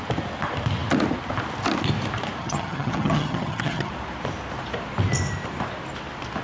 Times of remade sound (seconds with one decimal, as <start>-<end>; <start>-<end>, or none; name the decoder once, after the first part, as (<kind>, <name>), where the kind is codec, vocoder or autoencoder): 2.4-3.9 (vocoder, HiFi-GAN)

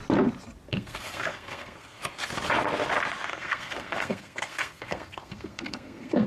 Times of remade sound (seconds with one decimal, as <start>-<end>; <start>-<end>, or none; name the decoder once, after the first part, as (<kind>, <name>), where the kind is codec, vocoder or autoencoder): 0.7-2.0 (codec, SNAC); 3.3-6.3

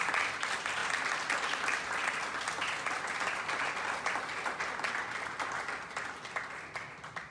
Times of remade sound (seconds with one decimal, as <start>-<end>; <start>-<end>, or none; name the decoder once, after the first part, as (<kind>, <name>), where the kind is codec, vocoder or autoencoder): none